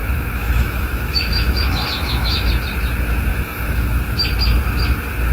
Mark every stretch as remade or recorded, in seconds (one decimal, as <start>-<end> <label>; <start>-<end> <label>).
0.0-2.5 remade; 2.5-3.3 recorded; 3.3-4.0 remade; 4.0-5.3 recorded